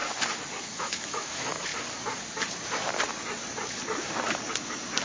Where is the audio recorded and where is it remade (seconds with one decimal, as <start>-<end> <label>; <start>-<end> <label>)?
0.0-0.6 recorded; 0.6-1.7 remade; 1.7-5.0 recorded